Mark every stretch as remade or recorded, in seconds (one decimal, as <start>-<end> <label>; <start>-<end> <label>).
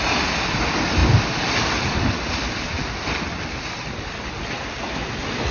0.0-1.0 recorded; 1.0-4.3 remade; 4.3-5.5 recorded